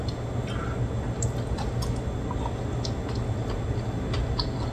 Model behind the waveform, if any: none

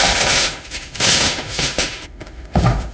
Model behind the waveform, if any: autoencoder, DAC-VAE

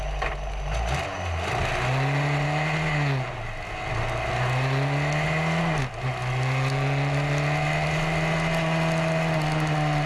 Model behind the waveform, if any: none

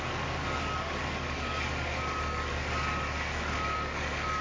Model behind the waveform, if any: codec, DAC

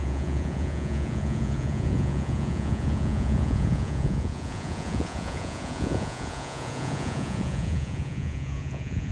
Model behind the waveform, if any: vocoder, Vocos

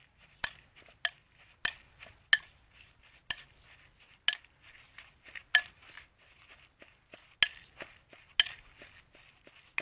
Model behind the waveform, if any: none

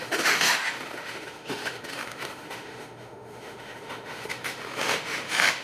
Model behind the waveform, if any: autoencoder, DAC-VAE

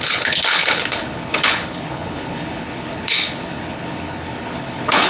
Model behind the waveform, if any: codec, HILCodec